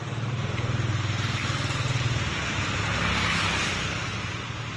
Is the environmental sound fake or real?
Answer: real